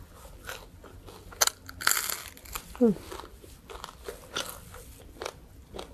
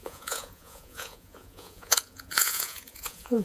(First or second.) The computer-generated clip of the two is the second